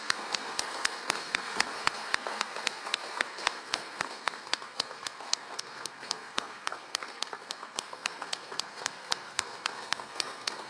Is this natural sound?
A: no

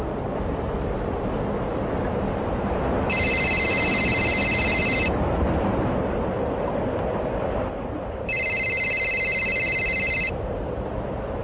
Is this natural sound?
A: yes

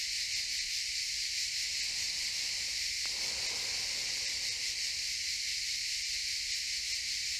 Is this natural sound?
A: yes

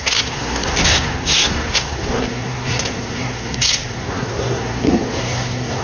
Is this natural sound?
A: no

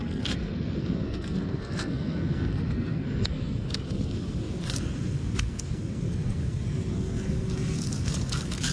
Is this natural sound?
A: no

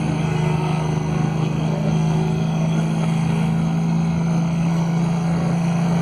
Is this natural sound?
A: no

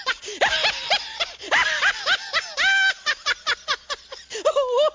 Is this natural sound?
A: yes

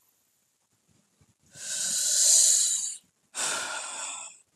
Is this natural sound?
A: yes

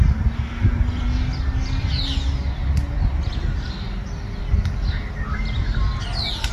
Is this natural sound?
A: yes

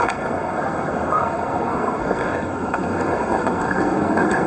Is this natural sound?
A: no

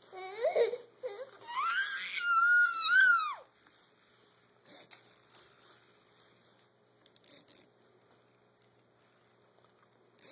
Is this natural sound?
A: yes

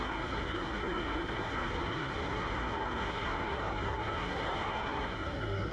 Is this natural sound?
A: no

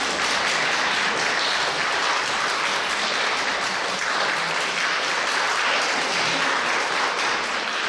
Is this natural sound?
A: yes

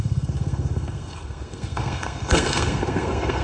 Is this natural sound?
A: no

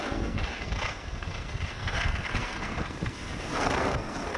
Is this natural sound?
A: no